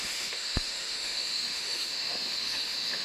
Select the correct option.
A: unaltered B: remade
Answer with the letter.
B